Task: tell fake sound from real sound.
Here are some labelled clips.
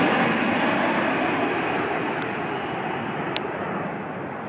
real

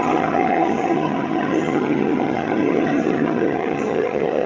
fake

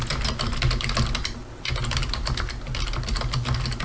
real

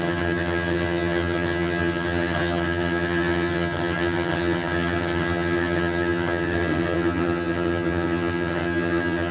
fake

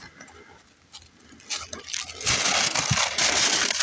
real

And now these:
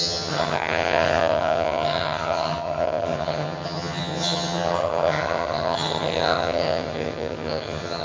fake